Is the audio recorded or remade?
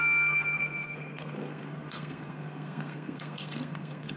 remade